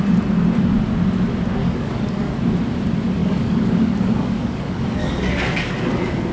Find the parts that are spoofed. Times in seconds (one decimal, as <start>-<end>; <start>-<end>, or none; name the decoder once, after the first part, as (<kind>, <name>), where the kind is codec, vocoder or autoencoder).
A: 1.6-2.4 (codec, DAC); 3.2-6.3